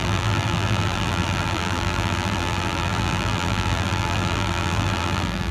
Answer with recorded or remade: remade